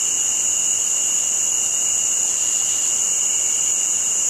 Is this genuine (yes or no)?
yes